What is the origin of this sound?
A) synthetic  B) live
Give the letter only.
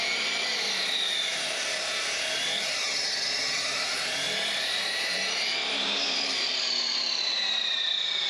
A